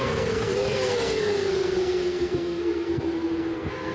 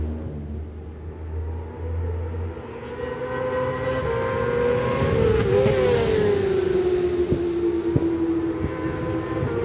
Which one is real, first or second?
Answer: second